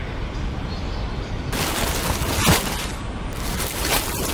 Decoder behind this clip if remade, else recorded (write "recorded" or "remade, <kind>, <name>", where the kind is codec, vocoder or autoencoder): recorded